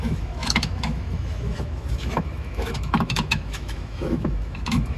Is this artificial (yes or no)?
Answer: yes